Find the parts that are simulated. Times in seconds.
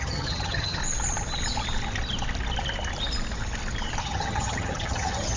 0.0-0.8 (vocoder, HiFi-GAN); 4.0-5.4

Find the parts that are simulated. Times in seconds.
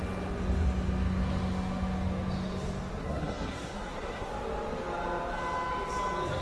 3.0-4.3 (codec, SNAC)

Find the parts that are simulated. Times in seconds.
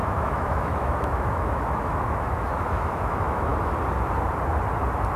0.0-3.5 (autoencoder, DAC-VAE)